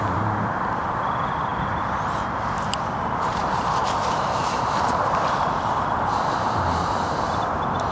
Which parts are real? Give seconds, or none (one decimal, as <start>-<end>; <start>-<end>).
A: none